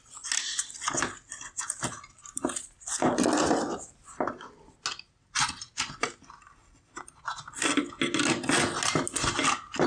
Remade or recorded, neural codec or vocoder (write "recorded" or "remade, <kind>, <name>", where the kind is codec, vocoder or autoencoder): recorded